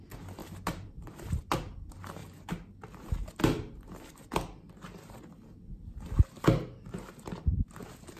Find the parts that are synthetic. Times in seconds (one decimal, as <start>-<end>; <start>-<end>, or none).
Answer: 0.4-1.4